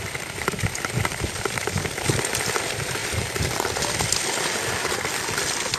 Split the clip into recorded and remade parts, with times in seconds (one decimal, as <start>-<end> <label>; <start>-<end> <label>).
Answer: 0.0-3.0 recorded; 3.0-4.2 remade; 4.2-5.8 recorded